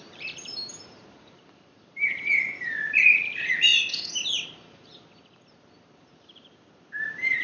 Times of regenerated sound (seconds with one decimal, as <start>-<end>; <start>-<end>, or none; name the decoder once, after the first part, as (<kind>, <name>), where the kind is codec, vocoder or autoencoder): 0.0-3.7 (vocoder, BigVGAN v2); 5.5-7.4